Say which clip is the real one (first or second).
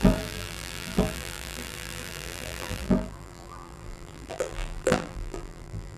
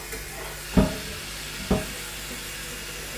second